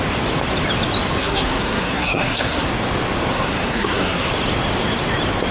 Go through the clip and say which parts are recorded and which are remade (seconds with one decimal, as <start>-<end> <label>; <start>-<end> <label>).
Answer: 0.0-1.2 recorded; 1.2-2.7 remade; 2.7-3.3 recorded; 3.3-4.3 remade; 4.3-5.5 recorded